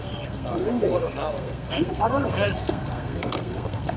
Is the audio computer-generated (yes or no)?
yes